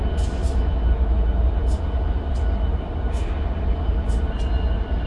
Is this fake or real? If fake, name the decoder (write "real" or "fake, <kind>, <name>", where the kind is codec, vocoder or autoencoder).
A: real